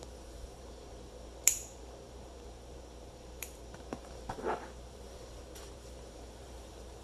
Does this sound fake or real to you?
fake